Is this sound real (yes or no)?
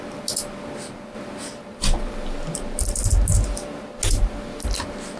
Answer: yes